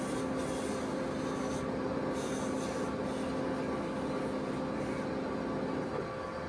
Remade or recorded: recorded